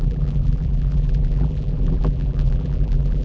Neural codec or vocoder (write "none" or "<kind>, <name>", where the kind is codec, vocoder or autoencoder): vocoder, BigVGAN v2